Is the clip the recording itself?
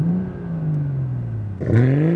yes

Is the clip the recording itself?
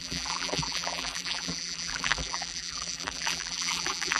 no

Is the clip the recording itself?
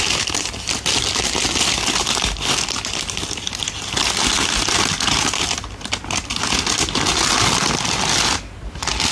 yes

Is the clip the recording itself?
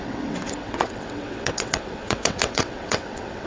no